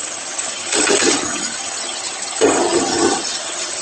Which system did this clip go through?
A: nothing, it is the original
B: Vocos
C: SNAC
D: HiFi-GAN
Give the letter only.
D